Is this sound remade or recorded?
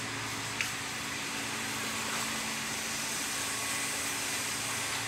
recorded